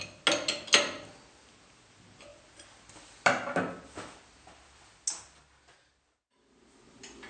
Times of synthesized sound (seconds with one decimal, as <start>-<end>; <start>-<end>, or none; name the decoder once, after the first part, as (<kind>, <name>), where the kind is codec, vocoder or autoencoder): none